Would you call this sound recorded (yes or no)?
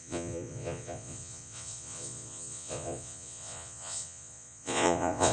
no